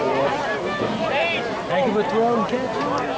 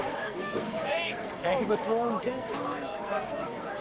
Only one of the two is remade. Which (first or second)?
second